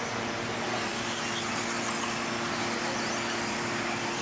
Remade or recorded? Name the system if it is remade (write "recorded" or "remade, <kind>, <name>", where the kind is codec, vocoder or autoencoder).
recorded